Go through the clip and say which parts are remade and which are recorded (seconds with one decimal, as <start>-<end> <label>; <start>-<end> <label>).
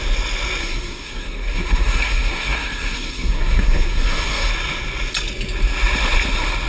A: 0.0-0.6 recorded; 0.6-4.5 remade; 4.5-6.7 recorded